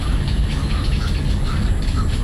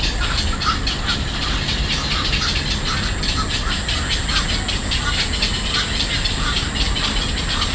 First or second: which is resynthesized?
first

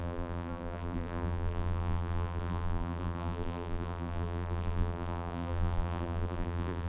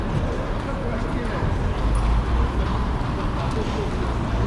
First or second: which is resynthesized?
first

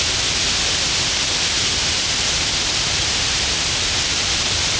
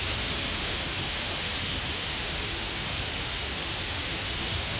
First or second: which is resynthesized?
second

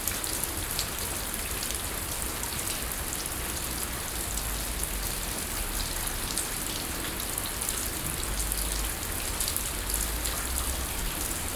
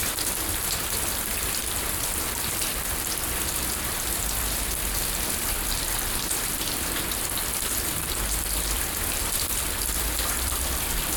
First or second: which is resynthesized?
second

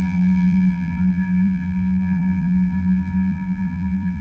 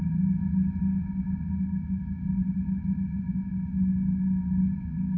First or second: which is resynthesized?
first